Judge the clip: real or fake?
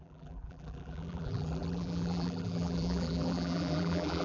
fake